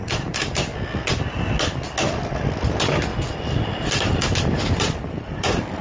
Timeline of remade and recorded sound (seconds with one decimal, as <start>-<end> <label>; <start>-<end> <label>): 0.0-0.7 remade; 0.7-2.7 recorded; 2.7-3.1 remade; 3.1-4.8 recorded; 4.8-5.8 remade